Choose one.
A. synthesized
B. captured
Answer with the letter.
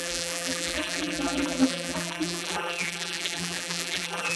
A